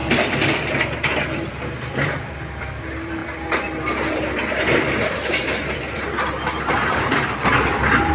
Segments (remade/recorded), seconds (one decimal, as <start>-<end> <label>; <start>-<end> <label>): 0.0-8.1 remade